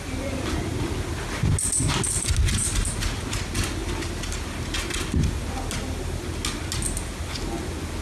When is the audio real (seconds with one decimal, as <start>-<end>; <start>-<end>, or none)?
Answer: 0.0-8.0

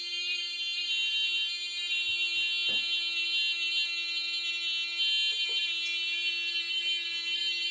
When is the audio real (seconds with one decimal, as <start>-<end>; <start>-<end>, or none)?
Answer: 0.0-7.7

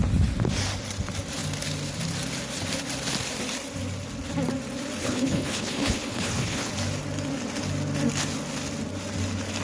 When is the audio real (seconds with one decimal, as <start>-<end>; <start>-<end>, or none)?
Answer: 0.0-5.0; 6.7-9.6

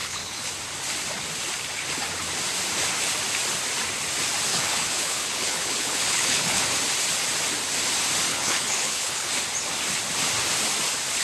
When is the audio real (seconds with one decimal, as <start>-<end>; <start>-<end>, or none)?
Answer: 0.5-4.5; 6.6-8.3; 9.3-11.2

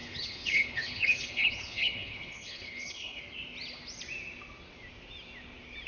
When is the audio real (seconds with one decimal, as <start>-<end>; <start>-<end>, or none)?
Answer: 3.2-5.9